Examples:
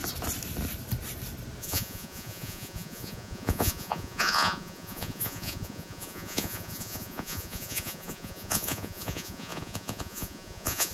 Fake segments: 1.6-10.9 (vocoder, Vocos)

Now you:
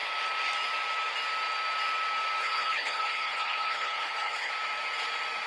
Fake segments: 2.4-4.5 (codec, HILCodec)

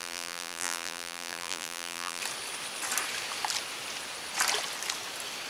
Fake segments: 0.0-2.2 (vocoder, BigVGAN v2)

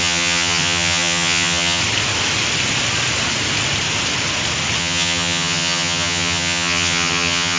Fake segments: 0.0-1.8 (vocoder, HiFi-GAN); 4.8-7.6